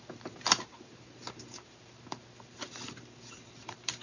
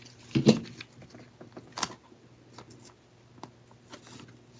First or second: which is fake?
first